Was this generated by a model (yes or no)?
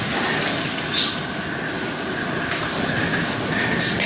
no